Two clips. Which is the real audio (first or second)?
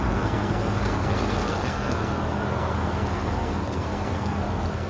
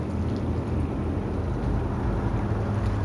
second